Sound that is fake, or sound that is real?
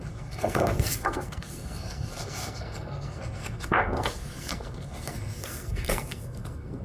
fake